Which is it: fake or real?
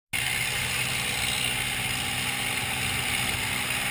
real